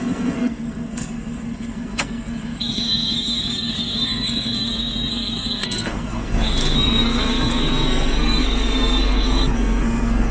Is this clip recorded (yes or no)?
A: no